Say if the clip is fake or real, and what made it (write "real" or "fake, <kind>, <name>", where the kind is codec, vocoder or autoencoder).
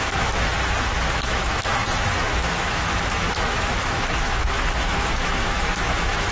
fake, autoencoder, DAC-VAE